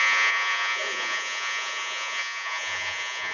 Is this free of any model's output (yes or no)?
no